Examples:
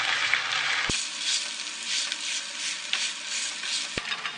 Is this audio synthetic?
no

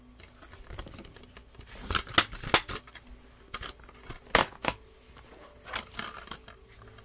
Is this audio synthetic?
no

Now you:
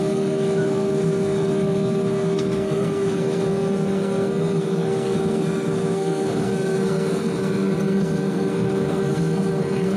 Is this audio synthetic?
yes